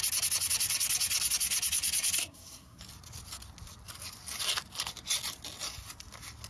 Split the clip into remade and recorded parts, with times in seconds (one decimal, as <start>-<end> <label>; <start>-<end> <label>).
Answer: 0.0-2.2 recorded; 2.2-2.8 remade; 2.8-6.5 recorded